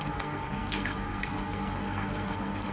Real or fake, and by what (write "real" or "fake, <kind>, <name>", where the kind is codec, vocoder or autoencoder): fake, codec, SNAC